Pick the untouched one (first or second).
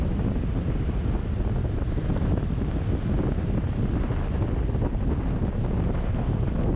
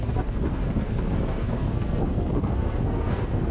first